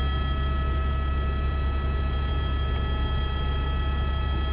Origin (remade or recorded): recorded